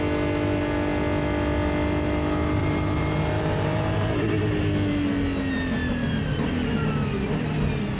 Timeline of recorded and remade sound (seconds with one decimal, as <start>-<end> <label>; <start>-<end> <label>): 0.0-2.6 recorded; 2.6-4.5 remade; 4.5-8.0 recorded